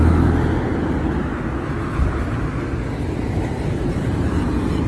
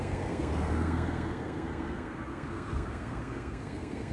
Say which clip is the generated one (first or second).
second